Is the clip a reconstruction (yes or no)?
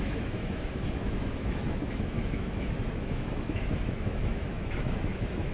yes